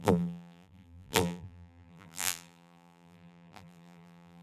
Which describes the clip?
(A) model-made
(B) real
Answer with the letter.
A